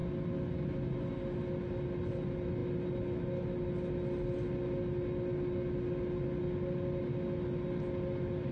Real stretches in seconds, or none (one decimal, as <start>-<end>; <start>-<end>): 0.0-8.5